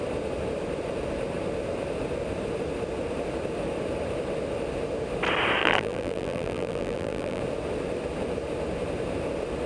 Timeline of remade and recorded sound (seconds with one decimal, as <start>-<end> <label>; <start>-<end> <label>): 0.0-5.6 recorded; 5.6-7.4 remade; 7.4-9.7 recorded